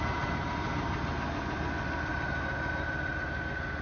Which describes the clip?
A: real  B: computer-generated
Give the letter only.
A